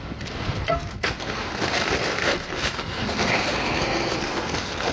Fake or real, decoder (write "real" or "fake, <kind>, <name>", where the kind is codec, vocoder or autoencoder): fake, codec, SNAC